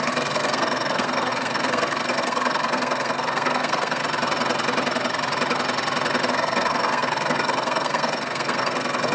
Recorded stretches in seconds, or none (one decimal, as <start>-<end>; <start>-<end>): 4.0-6.3